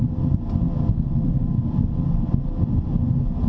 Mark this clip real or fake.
real